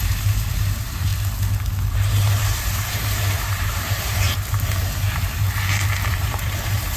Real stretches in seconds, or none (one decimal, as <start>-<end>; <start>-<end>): 1.1-2.1; 5.4-6.1